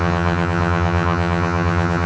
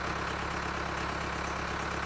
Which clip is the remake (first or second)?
first